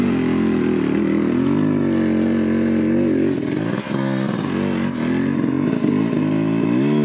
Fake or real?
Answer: real